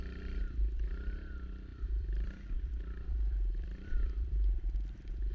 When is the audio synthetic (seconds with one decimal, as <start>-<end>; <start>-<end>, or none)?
1.7-5.3